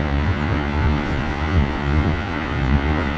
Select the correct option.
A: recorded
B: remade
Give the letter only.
B